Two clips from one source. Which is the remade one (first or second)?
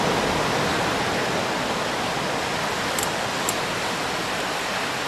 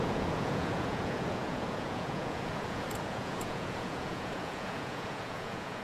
second